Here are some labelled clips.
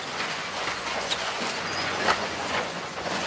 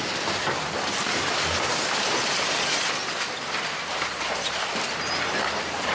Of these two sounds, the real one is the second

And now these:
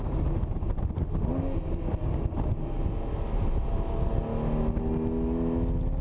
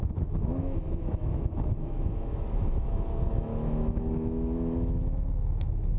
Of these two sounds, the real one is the first